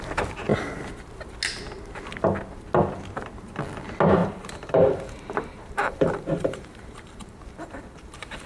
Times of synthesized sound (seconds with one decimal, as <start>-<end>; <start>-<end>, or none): 4.2-8.5